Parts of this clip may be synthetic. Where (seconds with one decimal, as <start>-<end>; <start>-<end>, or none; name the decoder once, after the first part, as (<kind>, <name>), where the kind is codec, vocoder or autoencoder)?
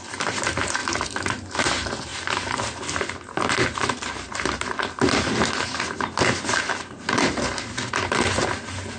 none